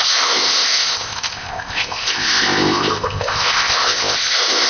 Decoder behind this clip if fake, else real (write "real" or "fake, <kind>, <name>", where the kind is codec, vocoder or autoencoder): fake, codec, ZipCodec